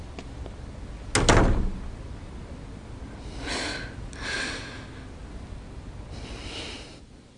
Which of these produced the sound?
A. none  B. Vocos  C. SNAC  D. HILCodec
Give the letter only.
A